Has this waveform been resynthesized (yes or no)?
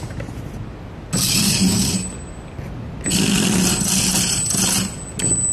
no